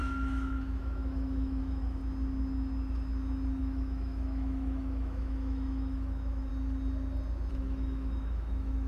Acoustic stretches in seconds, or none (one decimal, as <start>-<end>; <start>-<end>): 2.0-3.6; 6.5-7.5